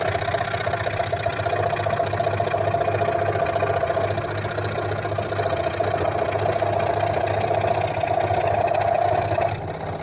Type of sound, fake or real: real